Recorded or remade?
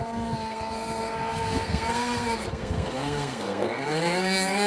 remade